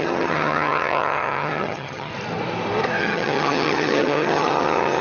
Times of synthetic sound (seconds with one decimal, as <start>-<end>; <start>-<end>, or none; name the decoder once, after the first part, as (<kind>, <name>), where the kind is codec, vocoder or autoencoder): 0.0-2.1 (vocoder, HiFi-GAN); 3.0-5.0